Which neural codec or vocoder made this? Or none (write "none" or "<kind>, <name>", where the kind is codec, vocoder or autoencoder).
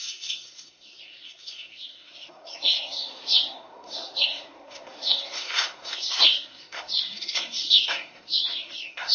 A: codec, SNAC